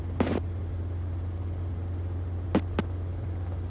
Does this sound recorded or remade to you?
recorded